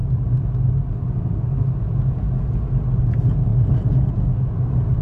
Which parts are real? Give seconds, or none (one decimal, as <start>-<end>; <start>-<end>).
0.0-5.0